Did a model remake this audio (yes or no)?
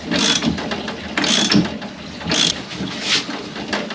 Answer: no